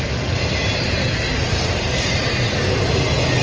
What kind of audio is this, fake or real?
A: real